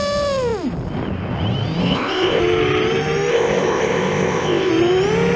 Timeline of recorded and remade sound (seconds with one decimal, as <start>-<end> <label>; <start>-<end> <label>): 0.0-1.8 recorded; 1.8-2.4 remade; 2.4-3.3 recorded; 3.3-4.7 remade; 4.7-5.4 recorded